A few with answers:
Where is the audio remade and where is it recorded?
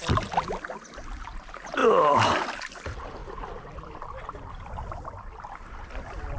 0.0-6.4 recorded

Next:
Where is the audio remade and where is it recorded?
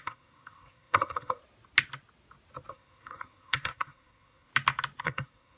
0.0-1.4 remade; 1.4-2.7 recorded; 2.7-4.5 remade; 4.5-5.0 recorded; 5.0-5.6 remade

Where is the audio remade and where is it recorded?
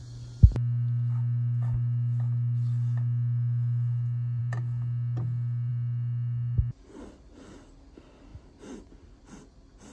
0.0-9.9 recorded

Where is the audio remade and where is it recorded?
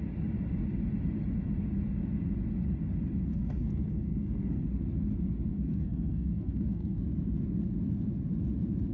0.0-3.3 recorded; 3.3-4.6 remade; 4.6-5.5 recorded; 5.5-7.0 remade; 7.0-8.9 recorded